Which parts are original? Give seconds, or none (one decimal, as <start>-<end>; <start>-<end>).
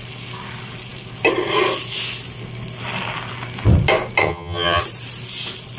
0.0-4.2; 4.8-5.8